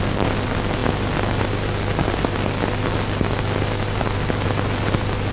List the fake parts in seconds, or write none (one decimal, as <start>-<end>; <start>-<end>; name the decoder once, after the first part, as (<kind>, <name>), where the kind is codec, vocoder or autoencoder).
none